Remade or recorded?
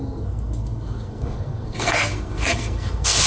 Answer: remade